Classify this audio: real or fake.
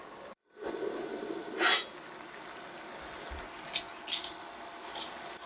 real